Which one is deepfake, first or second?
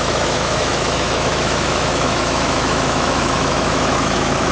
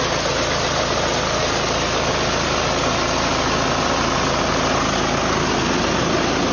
first